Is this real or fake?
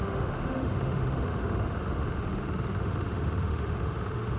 fake